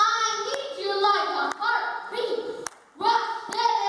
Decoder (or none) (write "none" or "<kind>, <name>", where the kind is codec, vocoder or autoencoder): none